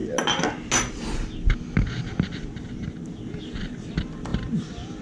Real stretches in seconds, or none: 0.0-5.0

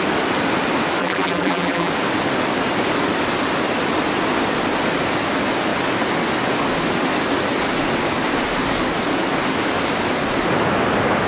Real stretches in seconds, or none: 0.0-1.0; 1.9-11.3

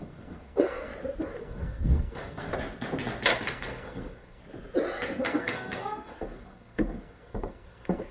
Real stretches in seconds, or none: 0.9-1.4; 2.5-3.4; 4.4-5.2

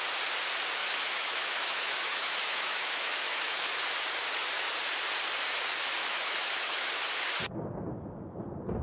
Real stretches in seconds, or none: 0.0-0.8; 3.7-6.0; 6.9-8.8

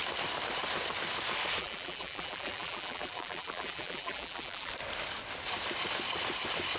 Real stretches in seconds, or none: 0.0-1.6; 4.7-6.8

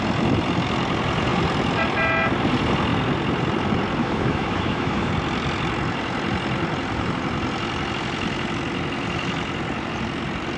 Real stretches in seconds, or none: 0.0-4.0; 5.1-10.6

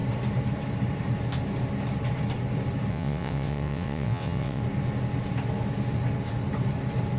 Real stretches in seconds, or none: 0.0-2.9; 4.6-7.2